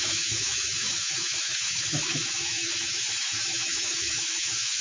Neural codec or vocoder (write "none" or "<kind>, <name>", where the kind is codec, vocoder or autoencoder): autoencoder, DAC-VAE